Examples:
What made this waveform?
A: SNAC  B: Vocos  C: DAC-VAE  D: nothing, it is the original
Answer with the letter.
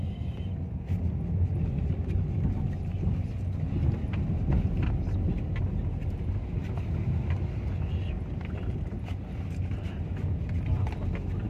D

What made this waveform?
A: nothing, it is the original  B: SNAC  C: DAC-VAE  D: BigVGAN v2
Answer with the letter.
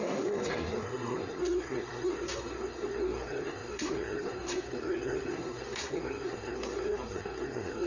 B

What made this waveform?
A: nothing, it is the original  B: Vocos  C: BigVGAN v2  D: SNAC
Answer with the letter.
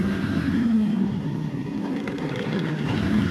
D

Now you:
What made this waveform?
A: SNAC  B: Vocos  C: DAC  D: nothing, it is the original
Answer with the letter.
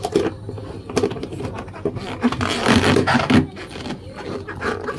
D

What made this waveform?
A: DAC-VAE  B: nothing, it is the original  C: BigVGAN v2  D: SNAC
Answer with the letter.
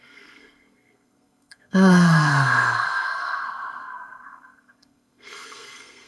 D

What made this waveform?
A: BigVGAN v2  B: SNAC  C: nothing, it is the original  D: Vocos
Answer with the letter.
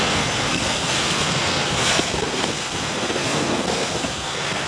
B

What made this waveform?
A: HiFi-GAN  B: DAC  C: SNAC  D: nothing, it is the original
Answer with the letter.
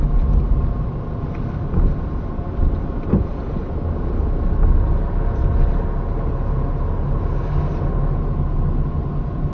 D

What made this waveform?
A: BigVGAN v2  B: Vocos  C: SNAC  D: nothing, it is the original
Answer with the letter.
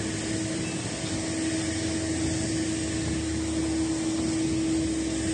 D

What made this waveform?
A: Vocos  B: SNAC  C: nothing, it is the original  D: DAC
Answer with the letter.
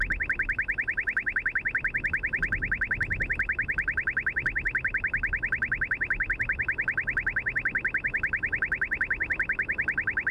C